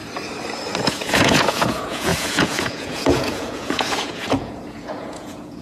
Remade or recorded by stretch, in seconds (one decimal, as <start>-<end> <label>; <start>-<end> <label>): 0.0-0.9 recorded; 0.9-5.6 remade